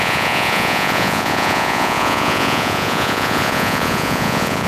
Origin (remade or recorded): remade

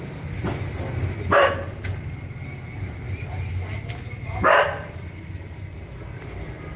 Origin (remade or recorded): recorded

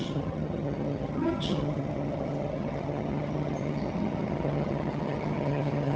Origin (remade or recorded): remade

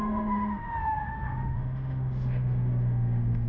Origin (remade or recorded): remade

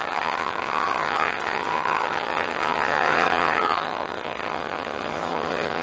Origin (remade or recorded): remade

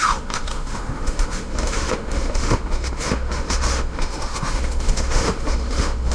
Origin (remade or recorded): remade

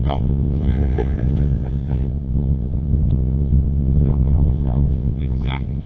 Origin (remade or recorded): remade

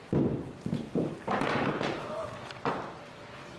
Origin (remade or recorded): recorded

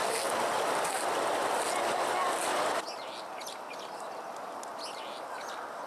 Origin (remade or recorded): recorded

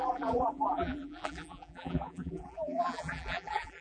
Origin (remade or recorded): remade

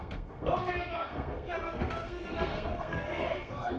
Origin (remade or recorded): remade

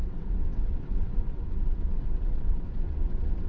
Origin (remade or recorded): remade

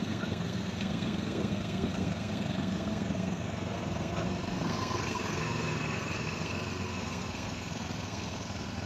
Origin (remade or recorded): remade